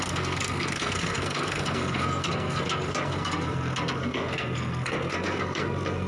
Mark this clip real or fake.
fake